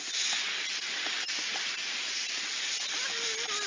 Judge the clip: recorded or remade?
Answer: recorded